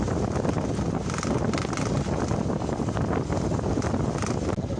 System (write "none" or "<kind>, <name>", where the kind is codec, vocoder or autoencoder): none